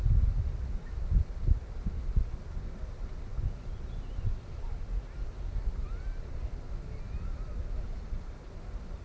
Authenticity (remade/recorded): recorded